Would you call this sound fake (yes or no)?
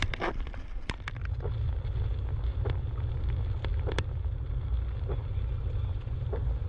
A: no